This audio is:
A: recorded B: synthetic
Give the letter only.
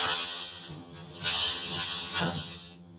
B